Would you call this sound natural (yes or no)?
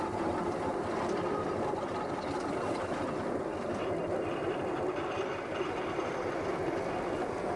yes